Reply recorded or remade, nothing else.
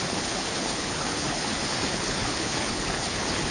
remade